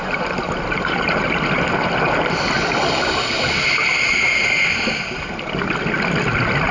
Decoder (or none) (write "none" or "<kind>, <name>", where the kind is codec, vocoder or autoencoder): none